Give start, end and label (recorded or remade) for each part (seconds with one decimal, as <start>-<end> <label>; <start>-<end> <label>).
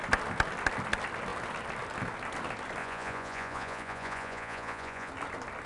0.0-2.8 recorded; 2.8-5.1 remade; 5.1-5.7 recorded